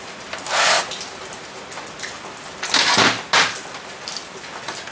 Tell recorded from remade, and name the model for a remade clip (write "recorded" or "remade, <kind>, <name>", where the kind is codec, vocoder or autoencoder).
recorded